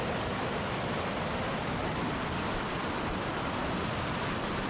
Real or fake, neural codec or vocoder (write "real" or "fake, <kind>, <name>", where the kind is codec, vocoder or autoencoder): real